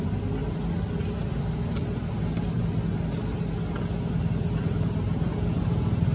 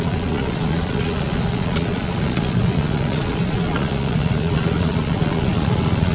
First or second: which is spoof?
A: second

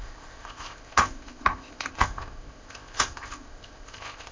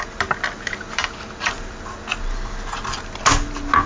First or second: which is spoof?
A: first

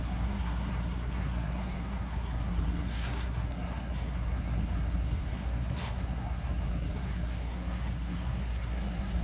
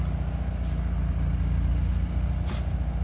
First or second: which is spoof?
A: first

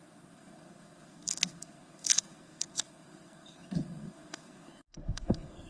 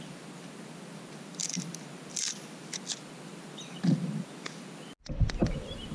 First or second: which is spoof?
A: first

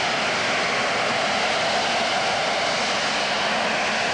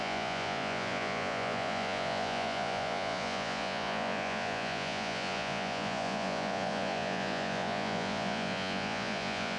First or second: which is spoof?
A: second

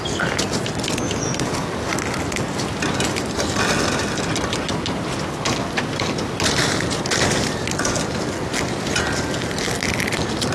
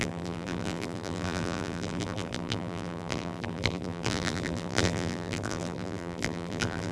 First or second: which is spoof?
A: second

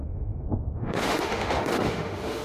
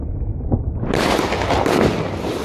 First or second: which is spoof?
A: first